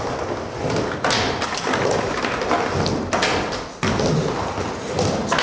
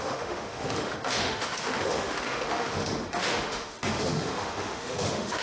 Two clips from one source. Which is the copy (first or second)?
second